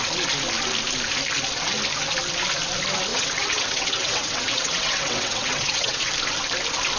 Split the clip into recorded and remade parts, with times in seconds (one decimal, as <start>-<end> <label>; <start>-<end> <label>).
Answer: 0.0-3.1 recorded; 3.1-6.1 remade; 6.1-7.0 recorded